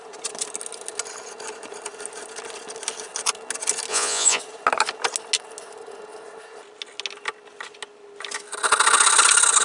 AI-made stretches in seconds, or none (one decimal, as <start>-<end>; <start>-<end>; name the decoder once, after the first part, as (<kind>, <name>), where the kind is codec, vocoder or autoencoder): 3.9-4.4 (vocoder, Vocos)